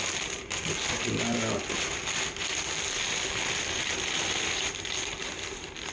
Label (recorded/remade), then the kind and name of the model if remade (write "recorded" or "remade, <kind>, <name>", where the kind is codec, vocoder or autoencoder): recorded